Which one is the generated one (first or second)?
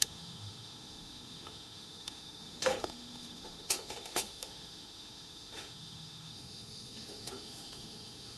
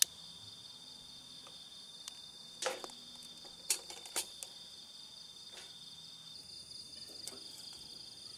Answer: first